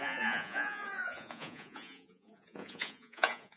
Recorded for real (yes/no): no